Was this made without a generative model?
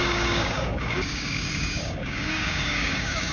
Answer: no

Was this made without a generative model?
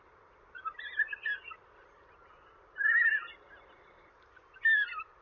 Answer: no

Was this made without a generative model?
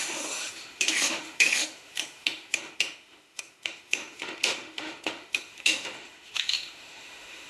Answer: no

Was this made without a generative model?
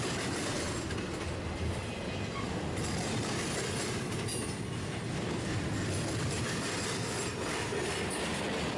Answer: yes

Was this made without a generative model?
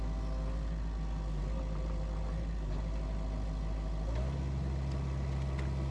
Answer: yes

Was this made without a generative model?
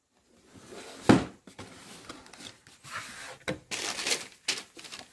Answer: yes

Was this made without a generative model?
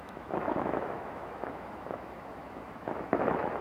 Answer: no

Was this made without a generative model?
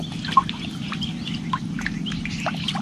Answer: yes